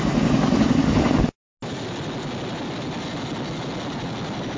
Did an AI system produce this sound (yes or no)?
no